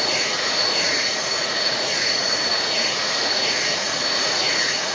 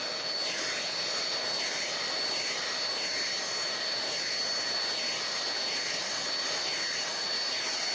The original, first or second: second